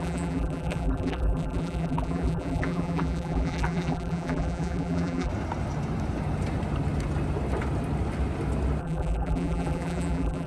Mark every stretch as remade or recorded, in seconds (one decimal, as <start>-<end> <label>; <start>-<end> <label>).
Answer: 0.0-5.3 remade; 5.3-8.8 recorded; 8.8-10.5 remade